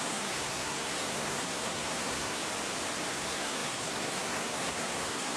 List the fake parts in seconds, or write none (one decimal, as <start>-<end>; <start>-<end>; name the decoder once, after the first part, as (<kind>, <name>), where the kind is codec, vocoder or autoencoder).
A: 0.0-2.4 (codec, SNAC); 3.1-5.4